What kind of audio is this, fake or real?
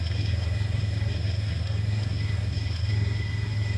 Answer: fake